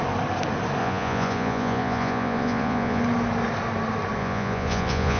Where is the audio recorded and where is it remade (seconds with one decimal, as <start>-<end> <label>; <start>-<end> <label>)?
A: 0.0-0.8 recorded; 0.8-3.0 remade; 3.0-4.2 recorded; 4.2-5.2 remade